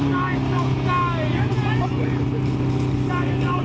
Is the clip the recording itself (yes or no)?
yes